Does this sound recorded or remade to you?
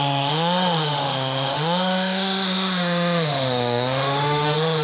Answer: remade